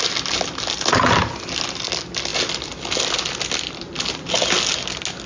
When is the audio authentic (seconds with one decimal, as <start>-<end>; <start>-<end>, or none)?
0.0-5.3